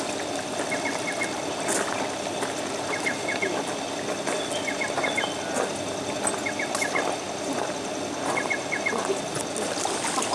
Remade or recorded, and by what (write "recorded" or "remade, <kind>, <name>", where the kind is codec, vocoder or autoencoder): recorded